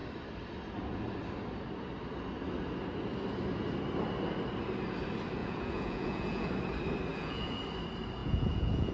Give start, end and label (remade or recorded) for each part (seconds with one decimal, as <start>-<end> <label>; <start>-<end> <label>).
0.0-5.4 recorded; 5.4-6.5 remade; 6.5-7.1 recorded; 7.1-7.6 remade; 7.6-8.2 recorded; 8.2-8.9 remade